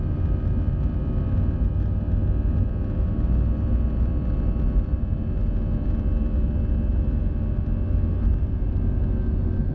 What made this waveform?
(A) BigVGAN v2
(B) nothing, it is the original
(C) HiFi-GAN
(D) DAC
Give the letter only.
B